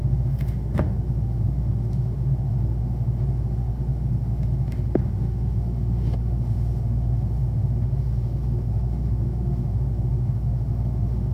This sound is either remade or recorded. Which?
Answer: remade